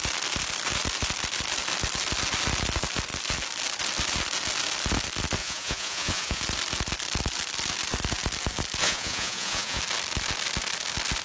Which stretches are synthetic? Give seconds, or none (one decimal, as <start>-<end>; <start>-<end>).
5.4-6.4; 8.8-9.8